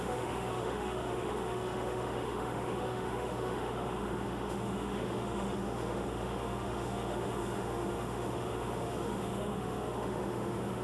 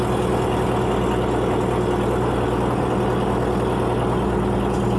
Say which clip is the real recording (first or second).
second